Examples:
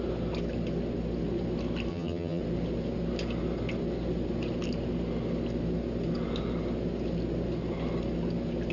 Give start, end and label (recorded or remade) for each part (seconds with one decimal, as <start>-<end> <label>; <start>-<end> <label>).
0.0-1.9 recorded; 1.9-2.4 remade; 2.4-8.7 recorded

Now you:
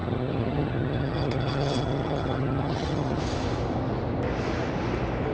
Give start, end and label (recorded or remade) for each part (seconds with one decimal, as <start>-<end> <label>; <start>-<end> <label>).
0.0-3.2 remade; 3.2-5.3 recorded

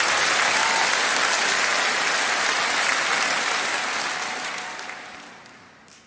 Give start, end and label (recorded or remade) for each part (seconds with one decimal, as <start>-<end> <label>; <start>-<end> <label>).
0.0-6.1 recorded